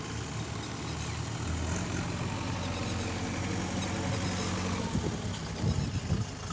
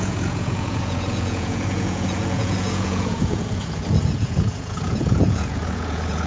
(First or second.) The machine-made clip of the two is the second